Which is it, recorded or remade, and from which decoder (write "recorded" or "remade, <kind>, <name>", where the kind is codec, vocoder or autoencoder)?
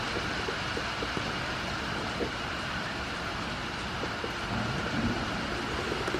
recorded